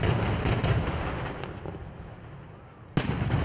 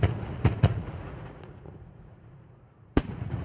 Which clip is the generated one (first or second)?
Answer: second